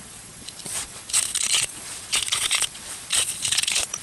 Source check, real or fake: fake